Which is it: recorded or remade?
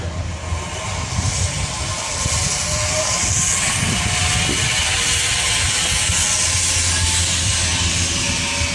recorded